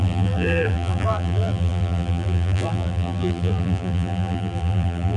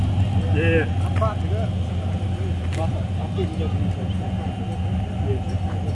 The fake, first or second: first